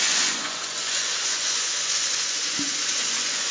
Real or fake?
fake